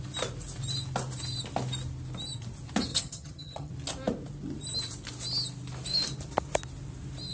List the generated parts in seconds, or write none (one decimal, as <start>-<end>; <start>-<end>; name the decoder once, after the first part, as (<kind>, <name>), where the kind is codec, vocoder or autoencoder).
2.9-3.7 (vocoder, HiFi-GAN)